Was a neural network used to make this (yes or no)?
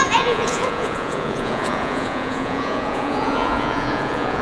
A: yes